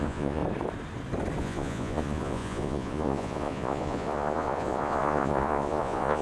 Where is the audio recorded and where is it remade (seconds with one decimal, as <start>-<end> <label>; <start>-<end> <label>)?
0.0-0.4 remade; 0.4-1.4 recorded; 1.4-6.2 remade